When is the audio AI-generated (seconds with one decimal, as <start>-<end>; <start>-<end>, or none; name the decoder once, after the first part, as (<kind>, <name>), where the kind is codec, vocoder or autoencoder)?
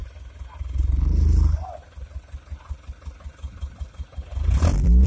2.2-5.1 (vocoder, BigVGAN v2)